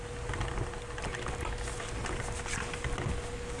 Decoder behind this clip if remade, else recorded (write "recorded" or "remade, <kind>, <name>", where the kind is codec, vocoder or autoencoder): recorded